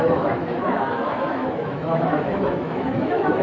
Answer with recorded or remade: remade